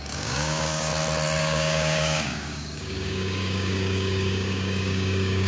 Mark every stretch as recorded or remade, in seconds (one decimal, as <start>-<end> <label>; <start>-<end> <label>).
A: 0.0-0.9 remade; 0.9-1.4 recorded; 1.4-5.5 remade